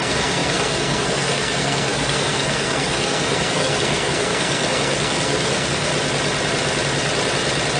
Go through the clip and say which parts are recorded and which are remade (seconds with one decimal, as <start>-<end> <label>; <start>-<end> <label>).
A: 0.0-5.9 remade; 5.9-7.8 recorded